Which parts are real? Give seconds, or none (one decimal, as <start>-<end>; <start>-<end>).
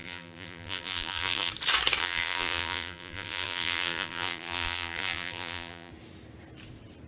1.5-2.0; 5.9-7.1